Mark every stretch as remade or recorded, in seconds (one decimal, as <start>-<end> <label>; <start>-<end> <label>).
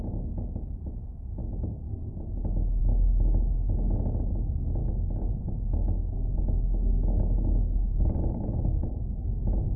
0.0-1.4 recorded; 1.4-2.2 remade; 2.2-4.8 recorded; 4.8-9.4 remade; 9.4-9.8 recorded